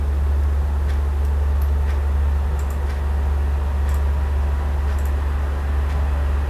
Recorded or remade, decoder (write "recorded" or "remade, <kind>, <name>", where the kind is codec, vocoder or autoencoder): recorded